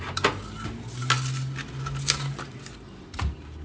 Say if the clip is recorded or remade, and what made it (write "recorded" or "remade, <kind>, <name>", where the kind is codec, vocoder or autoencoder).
recorded